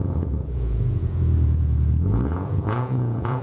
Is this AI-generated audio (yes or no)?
yes